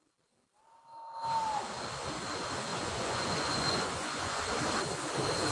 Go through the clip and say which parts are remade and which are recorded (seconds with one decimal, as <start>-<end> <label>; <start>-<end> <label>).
0.0-2.7 recorded; 2.7-4.4 remade; 4.4-5.5 recorded